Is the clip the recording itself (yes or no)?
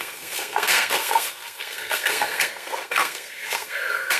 no